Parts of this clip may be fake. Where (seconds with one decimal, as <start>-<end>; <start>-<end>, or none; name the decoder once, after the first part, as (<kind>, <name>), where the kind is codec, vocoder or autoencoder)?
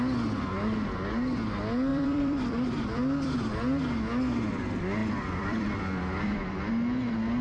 1.9-3.5 (vocoder, BigVGAN v2); 5.0-6.7